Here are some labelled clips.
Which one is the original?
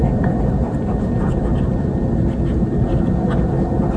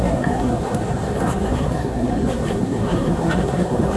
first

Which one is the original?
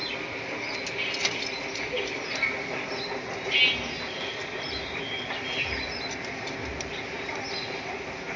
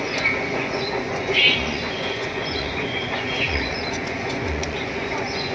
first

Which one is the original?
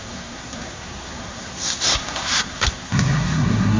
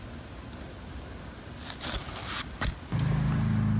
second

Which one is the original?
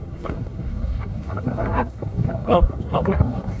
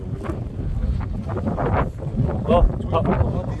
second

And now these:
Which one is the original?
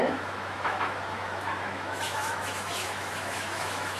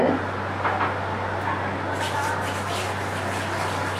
second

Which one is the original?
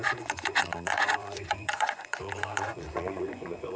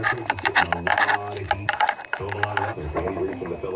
second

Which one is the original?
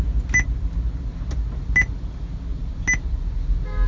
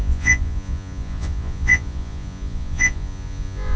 first